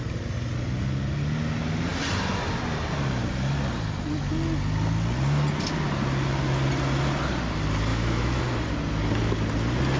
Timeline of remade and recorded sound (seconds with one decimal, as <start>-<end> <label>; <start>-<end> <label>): 0.0-7.9 recorded; 7.9-8.4 remade; 8.4-10.0 recorded